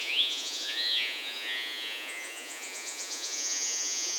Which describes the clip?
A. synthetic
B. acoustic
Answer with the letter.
A